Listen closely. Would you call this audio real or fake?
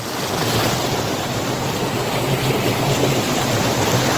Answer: real